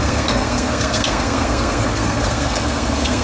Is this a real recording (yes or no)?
no